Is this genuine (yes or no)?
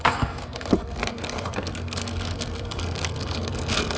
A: no